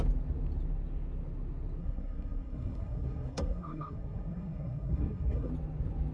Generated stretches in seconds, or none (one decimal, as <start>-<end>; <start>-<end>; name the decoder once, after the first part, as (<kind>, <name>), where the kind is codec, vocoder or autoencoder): 1.8-5.5 (codec, SNAC)